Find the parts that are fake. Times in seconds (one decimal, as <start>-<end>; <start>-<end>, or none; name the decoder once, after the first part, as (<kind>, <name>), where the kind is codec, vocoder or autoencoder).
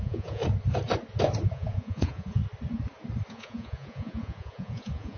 0.0-0.4 (vocoder, Vocos); 1.5-2.4; 3.3-5.2